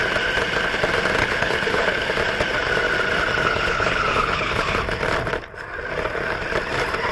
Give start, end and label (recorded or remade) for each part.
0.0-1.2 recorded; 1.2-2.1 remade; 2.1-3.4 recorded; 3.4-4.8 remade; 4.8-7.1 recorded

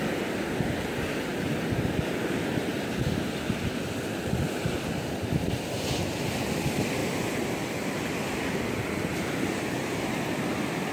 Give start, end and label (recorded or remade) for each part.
0.0-10.9 recorded

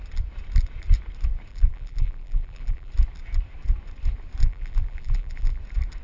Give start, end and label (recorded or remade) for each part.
0.0-1.5 recorded; 1.5-2.9 remade; 2.9-4.4 recorded; 4.4-5.6 remade; 5.6-6.0 recorded

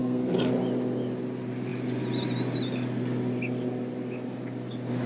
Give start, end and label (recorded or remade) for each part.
0.0-0.5 remade; 0.5-5.1 recorded

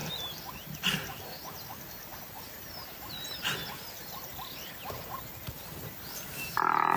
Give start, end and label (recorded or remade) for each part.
0.0-1.2 remade; 1.2-7.0 recorded